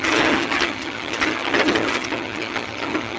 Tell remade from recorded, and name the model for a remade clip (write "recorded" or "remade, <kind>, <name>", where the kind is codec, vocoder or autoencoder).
remade, vocoder, HiFi-GAN